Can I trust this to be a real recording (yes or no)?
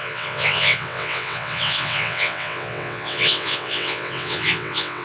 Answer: no